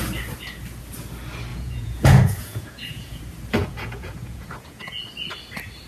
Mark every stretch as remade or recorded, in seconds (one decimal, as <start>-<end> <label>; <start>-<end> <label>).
0.0-1.5 recorded; 1.5-3.2 remade; 3.2-3.6 recorded; 3.6-5.0 remade; 5.0-5.9 recorded